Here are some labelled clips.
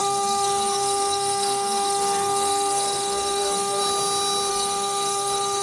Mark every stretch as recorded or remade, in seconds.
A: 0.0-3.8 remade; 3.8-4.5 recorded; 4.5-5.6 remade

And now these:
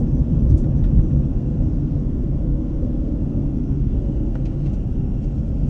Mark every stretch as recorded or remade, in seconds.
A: 0.0-1.3 recorded; 1.3-4.7 remade; 4.7-5.7 recorded

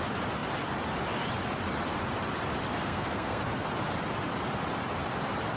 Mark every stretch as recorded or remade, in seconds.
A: 0.0-2.7 recorded; 2.7-3.4 remade; 3.4-5.6 recorded

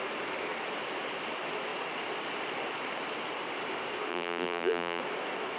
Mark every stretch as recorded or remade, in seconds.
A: 0.0-4.1 recorded; 4.1-5.0 remade; 5.0-5.6 recorded

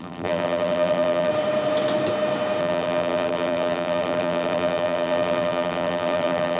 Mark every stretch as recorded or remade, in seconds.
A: 0.0-1.3 remade; 1.3-2.6 recorded; 2.6-6.6 remade